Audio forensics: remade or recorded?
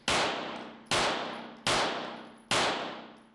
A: recorded